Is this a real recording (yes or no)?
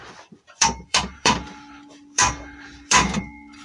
no